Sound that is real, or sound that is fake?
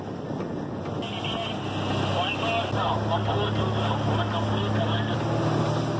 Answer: real